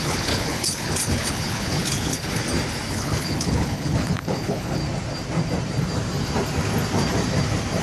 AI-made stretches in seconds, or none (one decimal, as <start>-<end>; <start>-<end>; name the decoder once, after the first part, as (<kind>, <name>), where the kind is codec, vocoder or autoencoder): 0.0-2.4 (codec, HILCodec); 2.9-4.8